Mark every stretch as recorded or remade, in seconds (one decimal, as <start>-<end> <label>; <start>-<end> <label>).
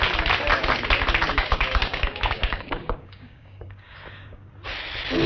0.0-1.3 recorded; 1.3-4.5 remade; 4.5-5.3 recorded